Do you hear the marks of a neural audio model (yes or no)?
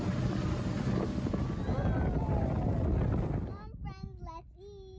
no